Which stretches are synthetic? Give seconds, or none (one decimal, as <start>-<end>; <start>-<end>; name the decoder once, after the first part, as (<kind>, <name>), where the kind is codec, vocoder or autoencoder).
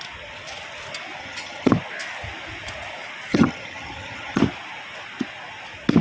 1.2-1.7 (vocoder, HiFi-GAN); 3.3-4.4